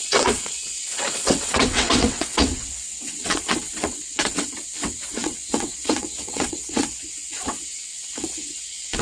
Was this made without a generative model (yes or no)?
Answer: no